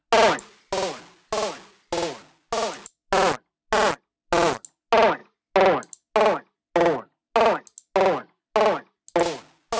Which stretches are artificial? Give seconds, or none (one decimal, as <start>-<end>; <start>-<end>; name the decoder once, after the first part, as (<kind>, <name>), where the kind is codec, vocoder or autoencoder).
none